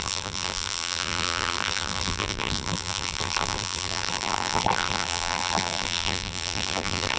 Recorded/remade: remade